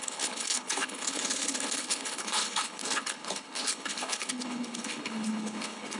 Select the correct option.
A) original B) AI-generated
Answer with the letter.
B